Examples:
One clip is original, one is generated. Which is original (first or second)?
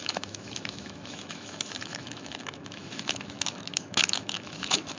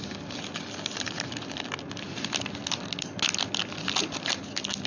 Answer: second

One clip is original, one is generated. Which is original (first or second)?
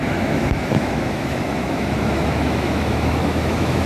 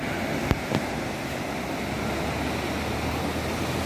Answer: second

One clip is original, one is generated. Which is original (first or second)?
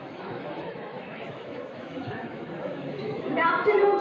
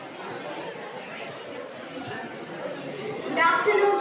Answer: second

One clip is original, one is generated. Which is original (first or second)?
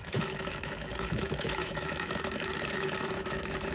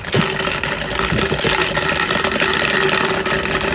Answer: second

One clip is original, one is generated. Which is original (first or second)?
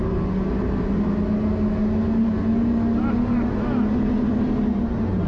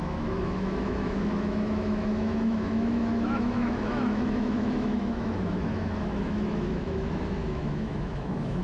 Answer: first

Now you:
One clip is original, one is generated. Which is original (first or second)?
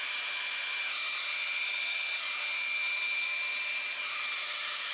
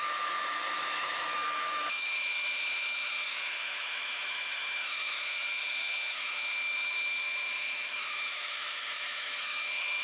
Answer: first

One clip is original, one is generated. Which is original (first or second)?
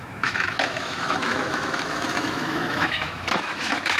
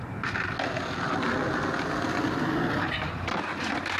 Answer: second